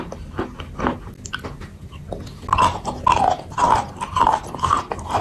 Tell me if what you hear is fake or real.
real